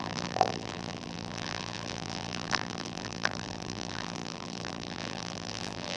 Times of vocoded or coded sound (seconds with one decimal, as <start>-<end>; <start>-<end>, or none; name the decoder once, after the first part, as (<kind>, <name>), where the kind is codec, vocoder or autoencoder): 0.0-6.0 (vocoder, BigVGAN v2)